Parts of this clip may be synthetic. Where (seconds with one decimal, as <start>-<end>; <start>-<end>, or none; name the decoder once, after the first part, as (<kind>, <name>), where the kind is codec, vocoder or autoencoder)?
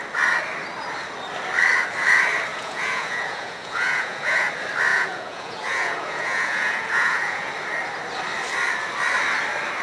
2.5-4.5 (vocoder, Vocos); 4.9-7.5